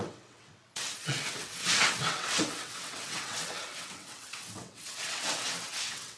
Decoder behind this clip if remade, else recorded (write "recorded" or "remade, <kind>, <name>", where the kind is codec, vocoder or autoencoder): remade, vocoder, WaveNeXt